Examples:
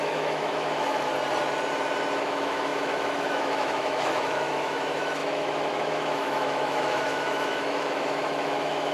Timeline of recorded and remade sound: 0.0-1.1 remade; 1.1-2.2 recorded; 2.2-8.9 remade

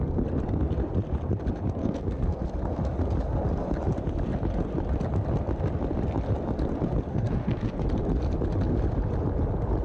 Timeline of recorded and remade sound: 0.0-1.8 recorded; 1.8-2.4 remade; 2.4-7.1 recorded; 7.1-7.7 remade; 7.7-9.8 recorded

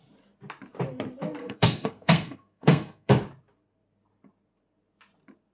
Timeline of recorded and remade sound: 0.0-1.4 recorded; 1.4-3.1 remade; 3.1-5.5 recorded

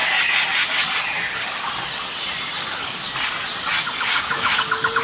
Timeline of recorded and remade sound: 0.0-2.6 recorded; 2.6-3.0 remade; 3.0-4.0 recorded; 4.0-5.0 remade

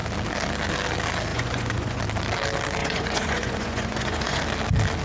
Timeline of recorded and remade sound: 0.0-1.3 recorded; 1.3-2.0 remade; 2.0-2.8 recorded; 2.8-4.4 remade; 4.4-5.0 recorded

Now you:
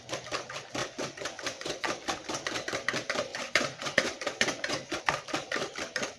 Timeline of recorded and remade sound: 0.0-0.8 recorded; 0.8-1.9 remade; 1.9-3.3 recorded; 3.3-5.0 remade; 5.0-6.2 recorded

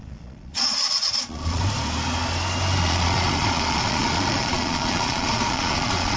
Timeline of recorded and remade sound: 0.0-1.6 remade; 1.6-2.8 recorded; 2.8-6.2 remade

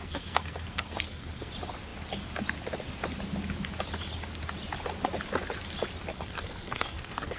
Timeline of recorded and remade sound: 0.0-1.5 remade; 1.5-6.1 recorded; 6.1-7.4 remade